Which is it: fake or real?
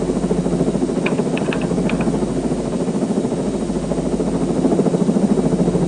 real